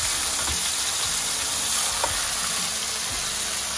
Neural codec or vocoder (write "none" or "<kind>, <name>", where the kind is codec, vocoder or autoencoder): none